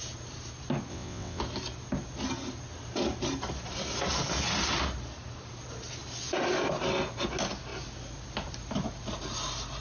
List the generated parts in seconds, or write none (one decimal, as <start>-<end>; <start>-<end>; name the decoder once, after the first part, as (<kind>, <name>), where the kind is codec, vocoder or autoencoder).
0.9-1.4 (vocoder, WaveNeXt)